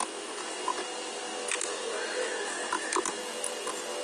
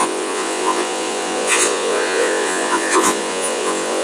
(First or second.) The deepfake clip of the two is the second